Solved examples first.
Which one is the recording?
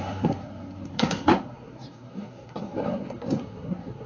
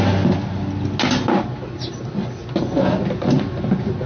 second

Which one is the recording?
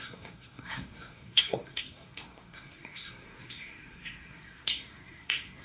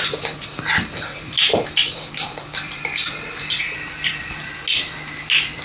second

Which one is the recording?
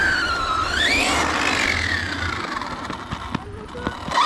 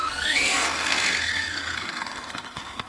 first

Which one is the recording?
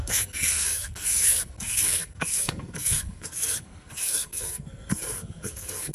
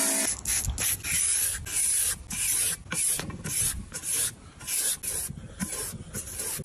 second